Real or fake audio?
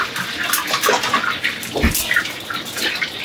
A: real